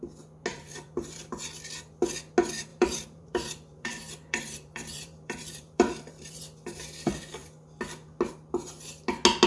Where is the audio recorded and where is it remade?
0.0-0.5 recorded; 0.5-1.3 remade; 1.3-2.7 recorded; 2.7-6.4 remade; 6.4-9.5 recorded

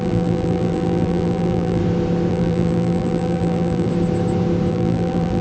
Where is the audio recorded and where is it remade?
0.0-1.8 remade; 1.8-2.3 recorded; 2.3-3.9 remade; 3.9-4.7 recorded; 4.7-5.4 remade